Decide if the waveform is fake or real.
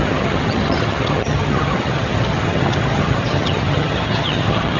fake